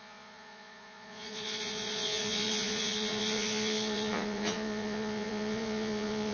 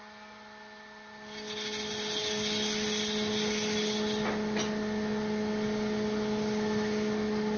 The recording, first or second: second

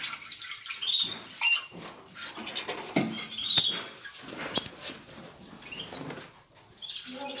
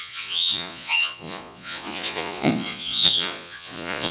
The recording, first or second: first